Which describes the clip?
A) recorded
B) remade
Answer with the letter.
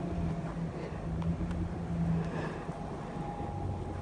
A